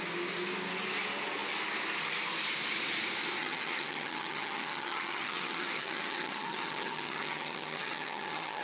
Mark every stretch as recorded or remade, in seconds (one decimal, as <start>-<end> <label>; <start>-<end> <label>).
0.0-3.4 recorded; 3.4-8.6 remade